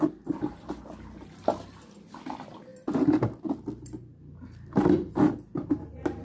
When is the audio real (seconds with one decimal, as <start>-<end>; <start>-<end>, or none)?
0.0-6.2